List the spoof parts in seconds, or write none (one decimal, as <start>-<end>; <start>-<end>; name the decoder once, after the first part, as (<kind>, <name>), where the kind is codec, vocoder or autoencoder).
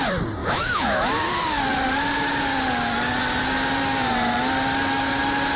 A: 0.4-1.0 (autoencoder, DAC-VAE)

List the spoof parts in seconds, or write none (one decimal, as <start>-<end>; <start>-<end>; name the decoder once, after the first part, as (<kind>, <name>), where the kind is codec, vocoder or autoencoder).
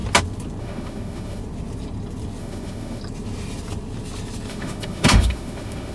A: 0.6-1.4 (autoencoder, DAC-VAE); 2.4-3.0; 4.5-5.9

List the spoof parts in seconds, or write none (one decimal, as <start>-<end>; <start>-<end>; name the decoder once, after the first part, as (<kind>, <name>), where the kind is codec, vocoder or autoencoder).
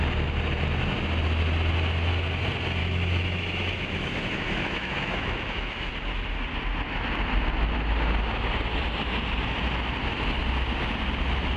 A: 2.8-5.9 (autoencoder, DAC-VAE)